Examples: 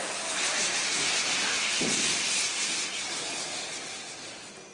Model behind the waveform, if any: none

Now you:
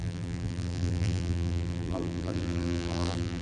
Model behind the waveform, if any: vocoder, BigVGAN v2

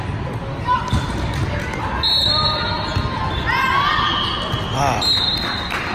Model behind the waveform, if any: none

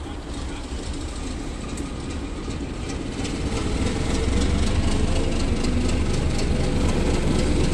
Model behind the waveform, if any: none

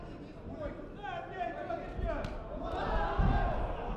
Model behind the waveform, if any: none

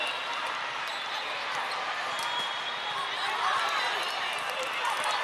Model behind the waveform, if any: none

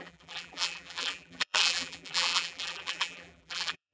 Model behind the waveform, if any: vocoder, BigVGAN v2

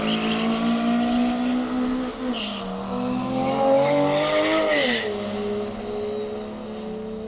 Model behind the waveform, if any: none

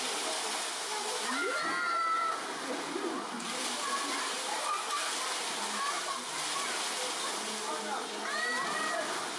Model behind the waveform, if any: none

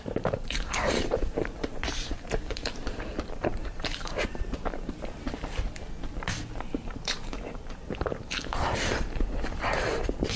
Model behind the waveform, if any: vocoder, BigVGAN v2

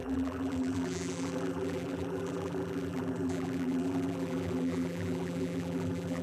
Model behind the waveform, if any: vocoder, BigVGAN v2